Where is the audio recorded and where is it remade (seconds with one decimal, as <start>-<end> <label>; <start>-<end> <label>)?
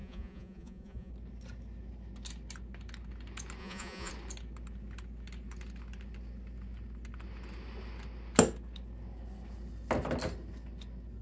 0.0-1.1 remade; 1.1-3.6 recorded; 3.6-4.1 remade; 4.1-11.2 recorded